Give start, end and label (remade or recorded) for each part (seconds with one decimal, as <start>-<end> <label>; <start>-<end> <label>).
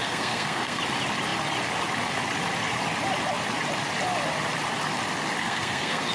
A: 0.0-0.8 remade; 0.8-5.4 recorded; 5.4-6.1 remade